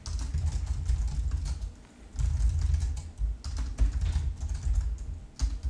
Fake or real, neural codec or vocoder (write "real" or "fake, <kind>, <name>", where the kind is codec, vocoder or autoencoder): real